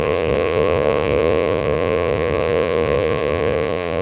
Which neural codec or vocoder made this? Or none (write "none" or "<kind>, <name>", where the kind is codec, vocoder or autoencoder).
vocoder, Vocos